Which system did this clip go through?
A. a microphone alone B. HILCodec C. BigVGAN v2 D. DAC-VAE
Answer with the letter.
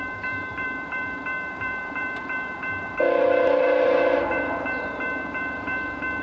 C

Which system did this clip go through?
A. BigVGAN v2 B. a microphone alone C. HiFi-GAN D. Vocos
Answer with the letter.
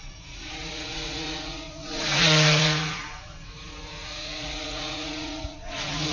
D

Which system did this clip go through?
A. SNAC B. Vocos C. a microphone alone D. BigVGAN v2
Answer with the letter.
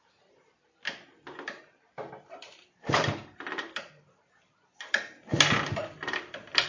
D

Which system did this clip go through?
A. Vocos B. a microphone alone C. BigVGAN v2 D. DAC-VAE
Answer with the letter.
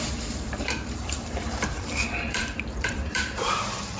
C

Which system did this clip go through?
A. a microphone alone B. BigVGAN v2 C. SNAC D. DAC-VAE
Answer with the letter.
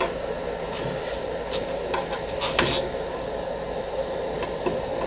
A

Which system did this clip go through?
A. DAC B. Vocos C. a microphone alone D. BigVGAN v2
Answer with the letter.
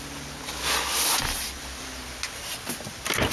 C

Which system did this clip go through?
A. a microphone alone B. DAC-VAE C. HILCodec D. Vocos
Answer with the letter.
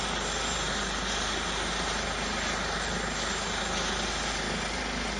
A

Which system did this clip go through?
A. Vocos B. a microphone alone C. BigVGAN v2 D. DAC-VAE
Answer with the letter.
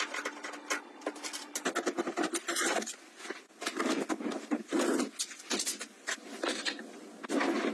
B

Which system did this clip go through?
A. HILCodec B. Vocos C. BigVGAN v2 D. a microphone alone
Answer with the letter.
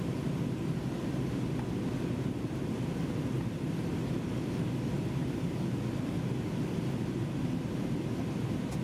D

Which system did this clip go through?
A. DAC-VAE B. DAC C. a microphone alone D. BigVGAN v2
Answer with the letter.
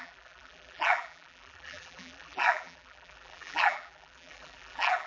D